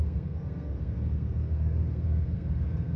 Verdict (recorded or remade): remade